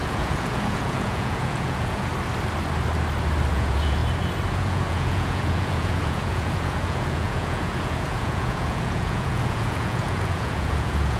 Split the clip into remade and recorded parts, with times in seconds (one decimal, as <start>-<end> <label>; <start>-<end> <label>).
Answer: 0.0-2.1 remade; 2.1-3.5 recorded; 3.5-4.0 remade; 4.0-4.5 recorded; 4.5-11.2 remade